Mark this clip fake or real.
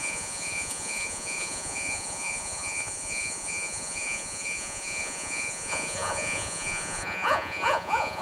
fake